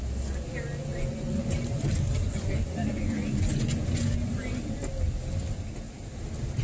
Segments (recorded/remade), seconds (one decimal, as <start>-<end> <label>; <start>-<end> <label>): 0.0-0.9 recorded; 0.9-1.4 remade; 1.4-2.3 recorded; 2.3-4.6 remade; 4.6-6.6 recorded